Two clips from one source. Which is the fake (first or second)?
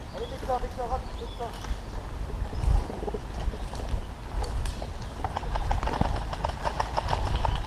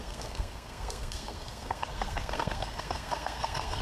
second